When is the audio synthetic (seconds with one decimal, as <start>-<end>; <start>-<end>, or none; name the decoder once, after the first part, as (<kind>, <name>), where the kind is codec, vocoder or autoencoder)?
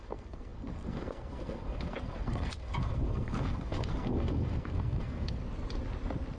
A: 0.0-5.4 (codec, SNAC)